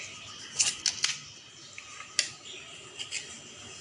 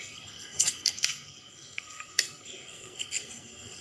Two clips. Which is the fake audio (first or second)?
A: second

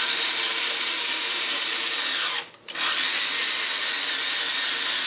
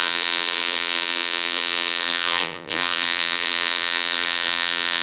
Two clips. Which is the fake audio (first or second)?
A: second